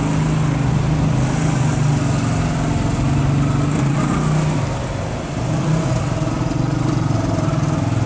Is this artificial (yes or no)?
no